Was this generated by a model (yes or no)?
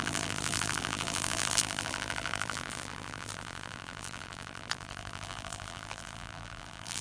yes